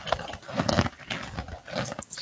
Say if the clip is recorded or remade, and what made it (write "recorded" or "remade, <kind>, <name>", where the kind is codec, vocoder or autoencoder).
recorded